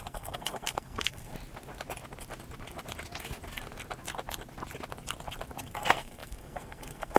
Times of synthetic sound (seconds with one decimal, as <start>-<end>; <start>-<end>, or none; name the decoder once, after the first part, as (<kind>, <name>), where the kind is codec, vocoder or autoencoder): 0.0-1.3 (codec, SNAC); 5.6-7.2